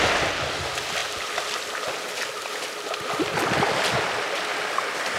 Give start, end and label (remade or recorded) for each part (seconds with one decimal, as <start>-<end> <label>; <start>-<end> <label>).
0.0-5.2 recorded